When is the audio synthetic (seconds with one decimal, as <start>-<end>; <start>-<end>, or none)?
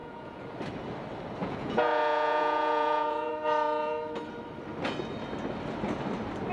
0.0-0.5; 1.4-3.3